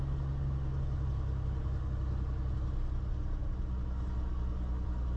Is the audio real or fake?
real